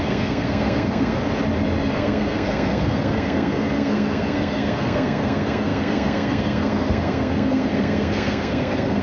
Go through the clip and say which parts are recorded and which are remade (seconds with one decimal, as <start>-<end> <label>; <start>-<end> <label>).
0.0-1.2 remade; 1.2-1.9 recorded; 1.9-9.0 remade